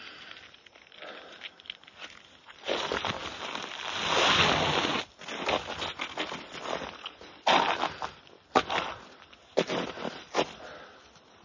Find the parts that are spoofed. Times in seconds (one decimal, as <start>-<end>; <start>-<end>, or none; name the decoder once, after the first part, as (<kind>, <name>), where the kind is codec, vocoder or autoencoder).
none